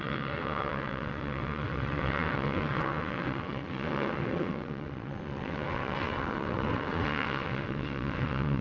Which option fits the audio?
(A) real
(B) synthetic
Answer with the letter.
B